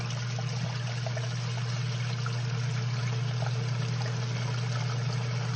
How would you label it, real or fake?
real